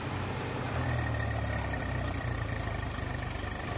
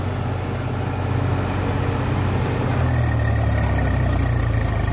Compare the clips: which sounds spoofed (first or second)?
first